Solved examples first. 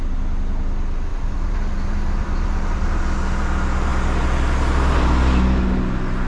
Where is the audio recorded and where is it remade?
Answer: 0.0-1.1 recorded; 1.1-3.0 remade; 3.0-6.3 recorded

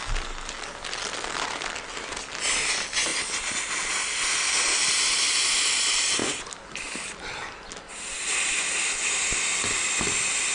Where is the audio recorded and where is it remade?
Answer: 0.0-10.5 recorded

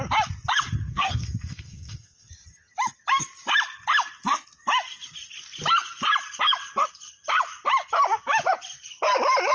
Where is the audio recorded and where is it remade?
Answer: 0.0-0.8 recorded; 0.8-2.3 remade; 2.3-9.5 recorded

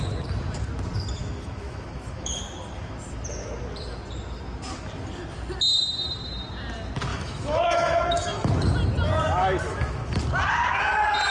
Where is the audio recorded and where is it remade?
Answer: 0.0-1.2 recorded; 1.2-2.4 remade; 2.4-7.1 recorded; 7.1-8.5 remade; 8.5-9.4 recorded; 9.4-10.1 remade; 10.1-11.3 recorded

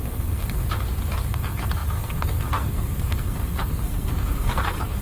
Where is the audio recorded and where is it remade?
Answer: 0.0-0.6 remade; 0.6-1.3 recorded; 1.3-5.0 remade

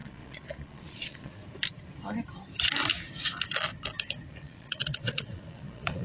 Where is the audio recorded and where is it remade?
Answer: 0.0-1.4 remade; 1.4-4.3 recorded; 4.3-6.0 remade